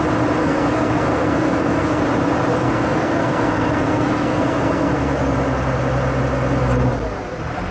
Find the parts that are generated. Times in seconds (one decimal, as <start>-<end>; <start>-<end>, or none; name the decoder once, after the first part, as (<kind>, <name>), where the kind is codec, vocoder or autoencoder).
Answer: 0.4-2.0 (codec, SNAC); 2.5-5.2